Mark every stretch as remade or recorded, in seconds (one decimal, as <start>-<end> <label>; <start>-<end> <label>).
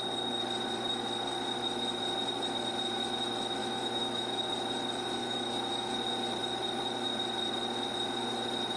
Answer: 0.0-3.6 recorded; 3.6-4.5 remade; 4.5-5.2 recorded; 5.2-5.9 remade; 5.9-8.8 recorded